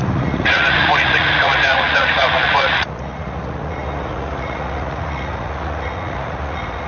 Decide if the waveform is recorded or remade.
remade